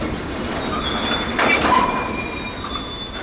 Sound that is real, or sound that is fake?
real